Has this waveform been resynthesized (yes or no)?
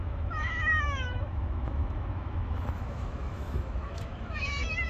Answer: yes